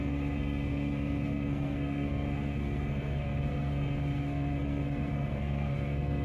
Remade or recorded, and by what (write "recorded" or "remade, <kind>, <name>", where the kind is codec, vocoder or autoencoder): remade, codec, SNAC